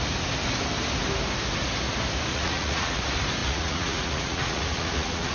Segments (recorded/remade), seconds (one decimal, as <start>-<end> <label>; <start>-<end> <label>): 0.0-2.3 recorded; 2.3-3.0 remade; 3.0-3.4 recorded; 3.4-5.3 remade